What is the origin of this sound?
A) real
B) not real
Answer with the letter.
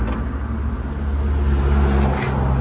A